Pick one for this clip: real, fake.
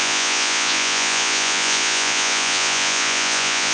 fake